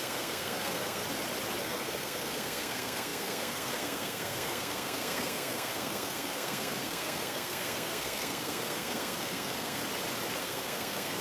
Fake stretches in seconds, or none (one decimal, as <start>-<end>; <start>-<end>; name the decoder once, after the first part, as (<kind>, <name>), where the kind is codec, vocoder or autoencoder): 0.0-1.0 (codec, SNAC); 1.6-9.8; 10.4-11.2